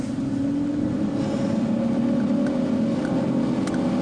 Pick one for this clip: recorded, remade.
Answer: recorded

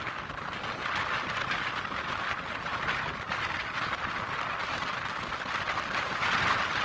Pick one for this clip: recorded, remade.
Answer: recorded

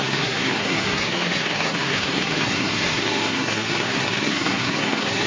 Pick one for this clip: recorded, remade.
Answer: remade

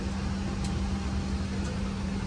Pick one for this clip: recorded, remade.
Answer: recorded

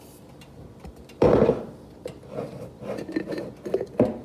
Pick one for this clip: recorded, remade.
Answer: recorded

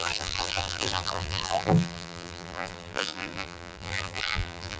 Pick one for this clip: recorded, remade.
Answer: remade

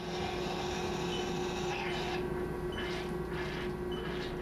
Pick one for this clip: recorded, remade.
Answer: recorded